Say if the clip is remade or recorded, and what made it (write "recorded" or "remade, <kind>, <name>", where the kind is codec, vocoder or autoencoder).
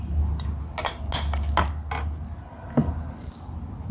recorded